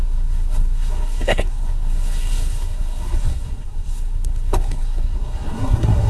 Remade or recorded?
remade